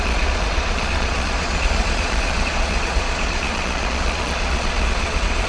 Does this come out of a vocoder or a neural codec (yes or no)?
yes